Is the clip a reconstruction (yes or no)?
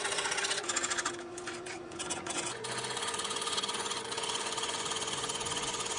yes